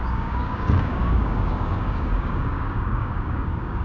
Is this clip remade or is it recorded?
remade